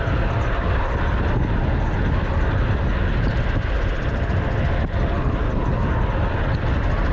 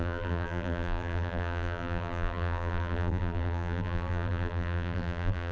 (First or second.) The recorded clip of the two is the first